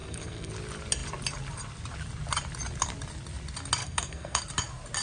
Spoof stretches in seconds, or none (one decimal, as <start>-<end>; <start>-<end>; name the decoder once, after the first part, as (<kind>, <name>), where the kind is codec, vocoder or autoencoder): 0.0-0.5 (codec, SNAC); 3.8-4.4